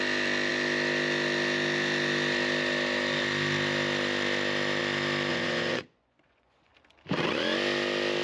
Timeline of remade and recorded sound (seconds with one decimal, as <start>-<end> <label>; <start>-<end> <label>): 0.0-5.3 recorded; 5.3-6.7 remade; 6.7-8.2 recorded